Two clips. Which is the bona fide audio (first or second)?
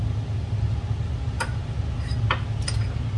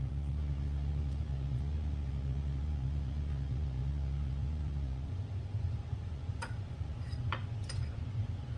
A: first